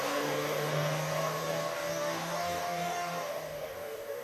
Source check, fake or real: fake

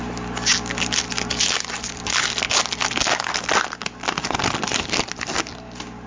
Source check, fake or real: real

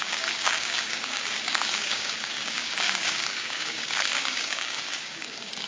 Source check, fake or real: fake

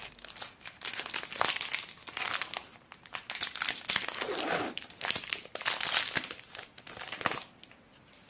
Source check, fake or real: real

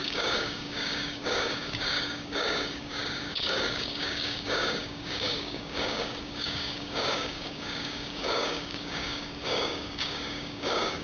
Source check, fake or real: fake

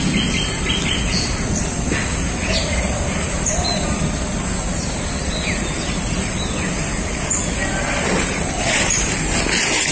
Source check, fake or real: real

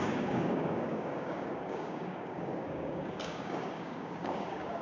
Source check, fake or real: fake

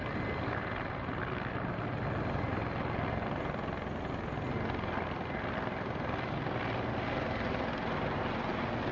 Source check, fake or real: real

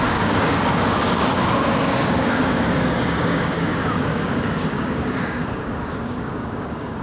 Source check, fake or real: fake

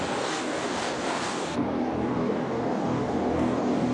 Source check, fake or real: fake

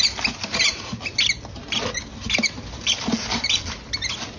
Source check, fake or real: real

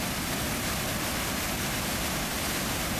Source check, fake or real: real